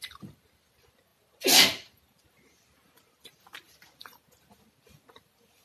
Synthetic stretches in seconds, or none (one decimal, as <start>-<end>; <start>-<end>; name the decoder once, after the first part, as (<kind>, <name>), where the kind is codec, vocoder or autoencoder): 0.0-5.6 (vocoder, BigVGAN v2)